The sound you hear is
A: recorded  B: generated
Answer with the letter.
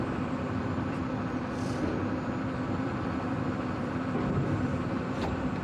B